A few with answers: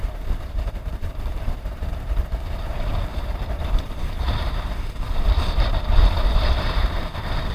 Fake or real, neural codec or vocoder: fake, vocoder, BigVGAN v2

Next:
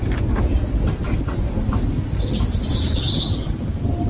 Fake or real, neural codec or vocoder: real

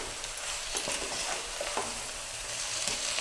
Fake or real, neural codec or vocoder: fake, vocoder, BigVGAN v2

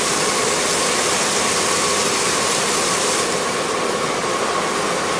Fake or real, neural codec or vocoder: real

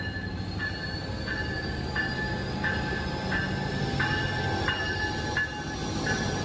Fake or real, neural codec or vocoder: real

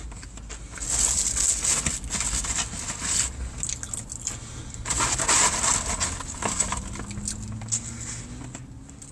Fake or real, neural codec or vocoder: real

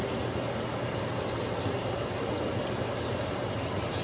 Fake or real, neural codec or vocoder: real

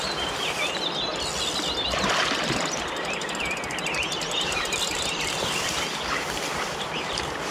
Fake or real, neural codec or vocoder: real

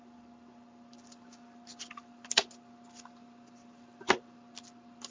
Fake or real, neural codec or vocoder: real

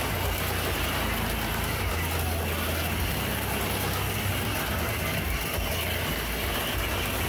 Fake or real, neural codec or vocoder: real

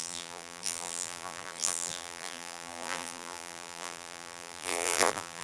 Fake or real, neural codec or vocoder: fake, vocoder, BigVGAN v2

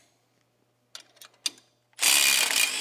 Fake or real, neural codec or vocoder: real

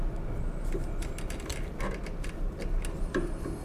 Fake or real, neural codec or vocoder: real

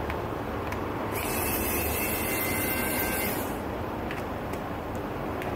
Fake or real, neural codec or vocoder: fake, vocoder, BigVGAN v2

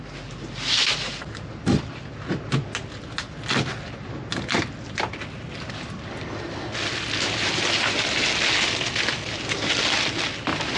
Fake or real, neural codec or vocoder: real